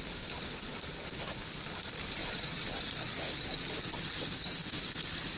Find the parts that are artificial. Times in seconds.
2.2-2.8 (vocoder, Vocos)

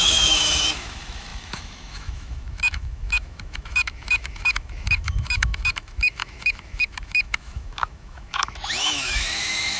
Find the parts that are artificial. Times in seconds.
0.0-9.8 (autoencoder, DAC-VAE)

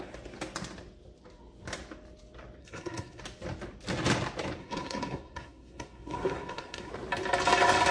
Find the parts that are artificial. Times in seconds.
2.6-3.2 (codec, SNAC); 4.6-6.9